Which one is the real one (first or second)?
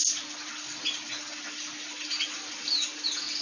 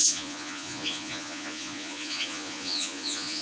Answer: first